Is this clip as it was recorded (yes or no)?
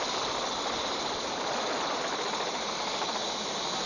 yes